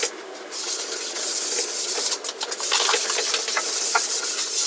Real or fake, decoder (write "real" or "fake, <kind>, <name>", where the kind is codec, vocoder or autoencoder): real